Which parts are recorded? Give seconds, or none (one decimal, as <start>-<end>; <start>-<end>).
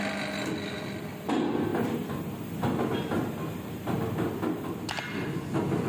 0.0-5.9